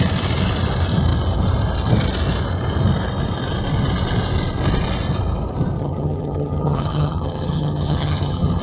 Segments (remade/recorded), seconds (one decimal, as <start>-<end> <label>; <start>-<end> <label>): 0.0-5.8 recorded; 5.8-8.6 remade